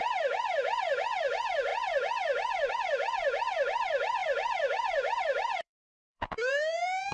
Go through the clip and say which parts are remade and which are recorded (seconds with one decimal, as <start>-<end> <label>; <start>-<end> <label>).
0.0-7.1 remade